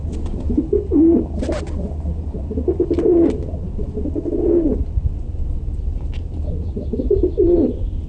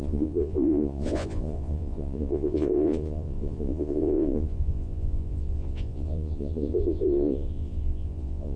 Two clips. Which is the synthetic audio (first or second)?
second